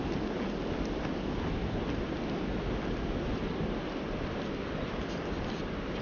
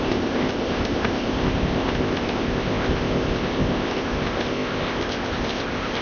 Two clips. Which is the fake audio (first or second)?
second